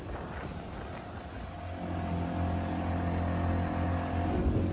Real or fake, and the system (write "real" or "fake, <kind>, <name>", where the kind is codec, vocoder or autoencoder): real